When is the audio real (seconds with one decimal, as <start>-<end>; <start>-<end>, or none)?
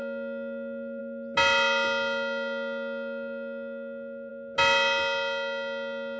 0.0-6.2